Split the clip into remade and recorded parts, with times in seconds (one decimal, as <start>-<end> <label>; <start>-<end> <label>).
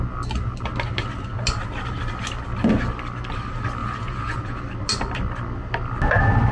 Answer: 0.0-3.8 recorded; 3.8-4.6 remade; 4.6-6.5 recorded